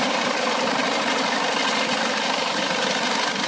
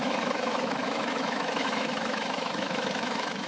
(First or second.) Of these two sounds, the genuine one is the first